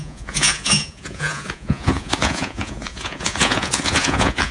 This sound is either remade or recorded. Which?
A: remade